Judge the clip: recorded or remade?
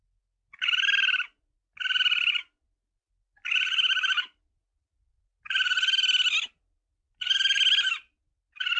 recorded